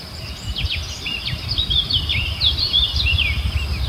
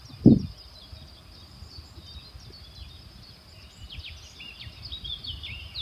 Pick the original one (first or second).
second